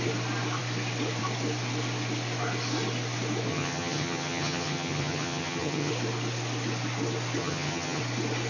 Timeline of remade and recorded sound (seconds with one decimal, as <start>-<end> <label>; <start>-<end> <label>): 0.0-3.5 recorded; 3.5-5.9 remade; 5.9-7.4 recorded; 7.4-8.0 remade; 8.0-8.5 recorded